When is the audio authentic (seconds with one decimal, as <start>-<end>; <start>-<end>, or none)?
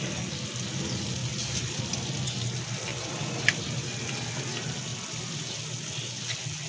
0.0-1.2; 1.8-2.9; 3.6-4.9; 6.1-6.7